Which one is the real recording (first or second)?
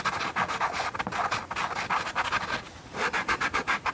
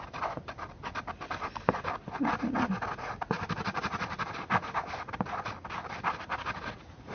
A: first